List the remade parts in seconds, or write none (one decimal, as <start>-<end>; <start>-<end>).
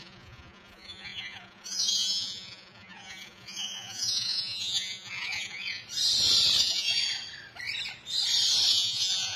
0.0-5.8; 6.6-7.0; 8.7-9.4